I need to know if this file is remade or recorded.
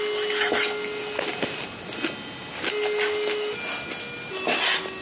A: recorded